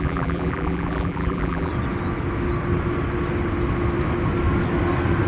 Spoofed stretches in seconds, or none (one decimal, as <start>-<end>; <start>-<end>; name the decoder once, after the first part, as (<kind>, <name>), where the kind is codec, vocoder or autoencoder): 0.0-1.7 (vocoder, BigVGAN v2)